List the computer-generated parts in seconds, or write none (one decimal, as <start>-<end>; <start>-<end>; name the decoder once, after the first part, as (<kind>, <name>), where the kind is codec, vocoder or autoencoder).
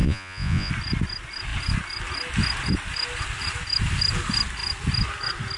0.0-0.7 (vocoder, Vocos)